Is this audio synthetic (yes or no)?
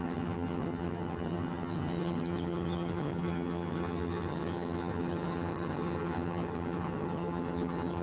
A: yes